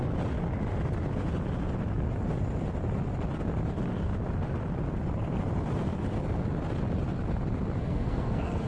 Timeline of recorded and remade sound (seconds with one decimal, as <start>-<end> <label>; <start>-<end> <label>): 0.0-7.8 recorded; 7.8-8.7 remade